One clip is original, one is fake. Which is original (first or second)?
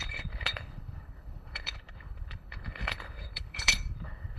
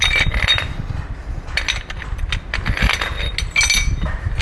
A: second